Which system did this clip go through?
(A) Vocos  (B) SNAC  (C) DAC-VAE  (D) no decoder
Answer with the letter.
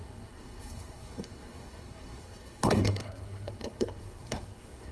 B